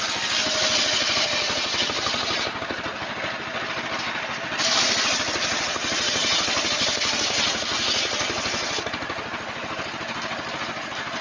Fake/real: real